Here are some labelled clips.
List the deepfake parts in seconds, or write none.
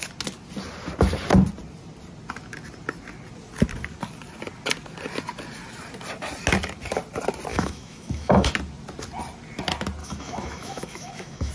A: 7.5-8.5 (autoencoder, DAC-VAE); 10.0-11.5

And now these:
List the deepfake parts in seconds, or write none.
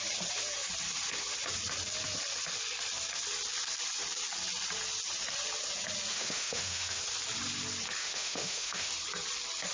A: 6.1-7.0 (autoencoder, DAC-VAE); 8.0-8.9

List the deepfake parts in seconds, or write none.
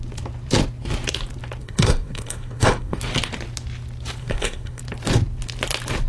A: 1.6-3.0 (codec, SNAC); 4.2-4.8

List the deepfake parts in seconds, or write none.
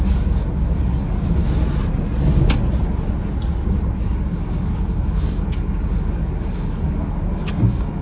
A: 0.0-1.4 (codec, DAC); 4.0-8.0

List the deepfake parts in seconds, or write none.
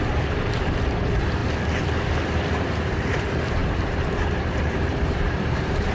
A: 0.0-1.4 (vocoder, BigVGAN v2); 2.5-5.9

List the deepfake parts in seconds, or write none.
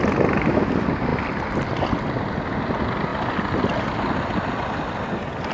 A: none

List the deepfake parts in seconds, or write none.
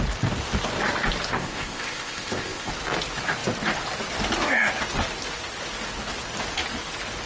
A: 1.3-2.7 (codec, ZipCodec)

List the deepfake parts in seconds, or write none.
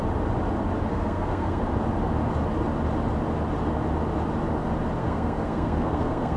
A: 0.9-1.6 (codec, SNAC); 5.0-6.4